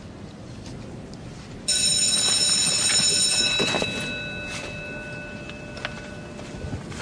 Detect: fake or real real